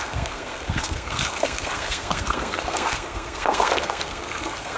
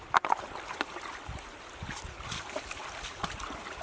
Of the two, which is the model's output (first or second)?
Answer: first